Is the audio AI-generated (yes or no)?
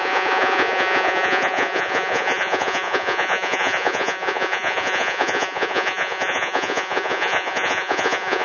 yes